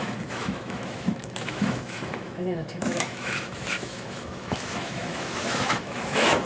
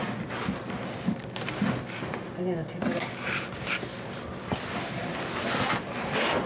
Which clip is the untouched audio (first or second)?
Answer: second